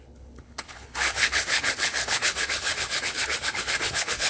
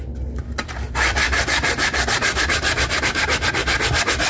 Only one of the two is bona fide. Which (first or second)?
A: second